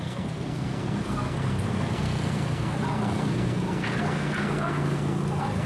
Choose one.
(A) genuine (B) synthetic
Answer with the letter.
B